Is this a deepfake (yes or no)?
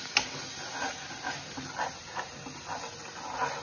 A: no